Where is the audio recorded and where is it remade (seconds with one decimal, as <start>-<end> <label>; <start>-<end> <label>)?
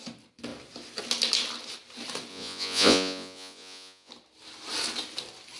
0.0-2.3 recorded; 2.3-4.1 remade; 4.1-5.6 recorded